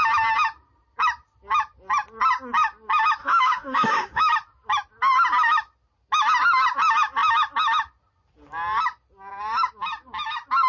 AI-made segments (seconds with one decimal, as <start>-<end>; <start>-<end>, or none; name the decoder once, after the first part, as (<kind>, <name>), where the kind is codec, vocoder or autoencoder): 3.2-4.3 (autoencoder, DAC-VAE)